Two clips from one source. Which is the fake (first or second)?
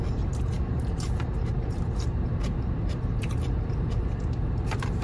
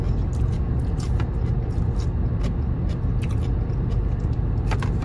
first